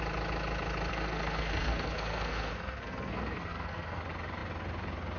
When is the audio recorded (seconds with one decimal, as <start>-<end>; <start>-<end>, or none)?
0.0-0.9; 4.0-5.2